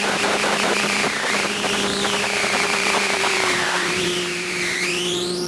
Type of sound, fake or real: fake